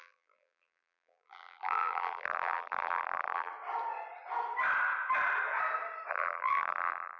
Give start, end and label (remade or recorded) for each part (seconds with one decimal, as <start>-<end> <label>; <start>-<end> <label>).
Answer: 0.0-3.5 remade; 3.5-6.1 recorded; 6.1-7.2 remade